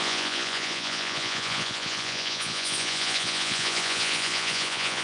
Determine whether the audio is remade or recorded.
remade